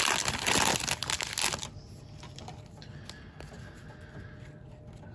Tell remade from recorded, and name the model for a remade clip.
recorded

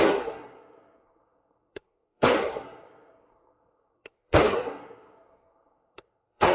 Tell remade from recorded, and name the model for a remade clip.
remade, codec, SNAC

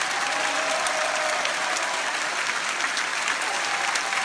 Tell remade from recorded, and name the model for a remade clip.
recorded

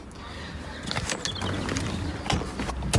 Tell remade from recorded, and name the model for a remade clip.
recorded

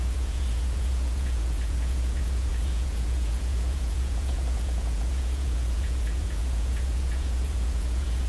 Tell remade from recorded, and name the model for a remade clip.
remade, vocoder, Vocos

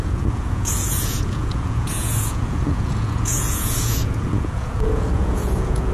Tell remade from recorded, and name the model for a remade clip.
remade, vocoder, Vocos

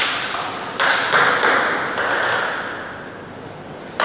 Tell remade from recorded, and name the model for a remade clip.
recorded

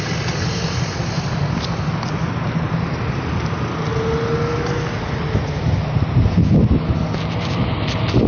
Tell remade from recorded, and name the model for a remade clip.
recorded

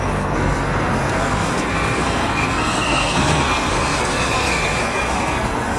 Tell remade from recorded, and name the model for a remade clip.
remade, codec, SNAC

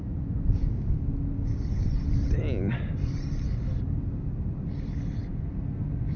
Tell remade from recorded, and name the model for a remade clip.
recorded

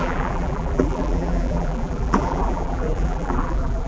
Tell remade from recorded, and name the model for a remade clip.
remade, vocoder, BigVGAN v2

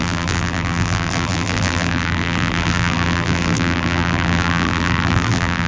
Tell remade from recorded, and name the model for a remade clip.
remade, vocoder, BigVGAN v2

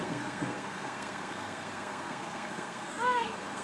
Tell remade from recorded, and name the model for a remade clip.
remade, codec, SNAC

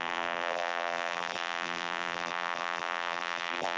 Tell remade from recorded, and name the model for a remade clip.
remade, vocoder, BigVGAN v2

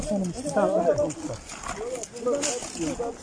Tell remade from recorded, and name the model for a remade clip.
recorded